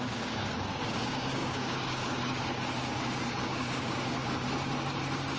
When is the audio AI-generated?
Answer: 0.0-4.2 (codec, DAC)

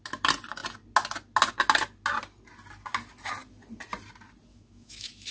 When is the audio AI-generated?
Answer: 4.5-5.3 (autoencoder, DAC-VAE)

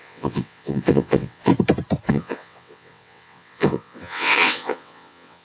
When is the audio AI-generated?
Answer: 0.0-1.5 (vocoder, WaveNeXt); 2.1-5.4

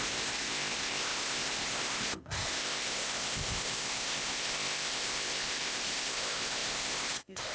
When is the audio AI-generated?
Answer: 0.0-7.5 (codec, ZipCodec)